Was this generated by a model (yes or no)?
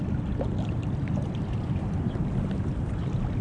no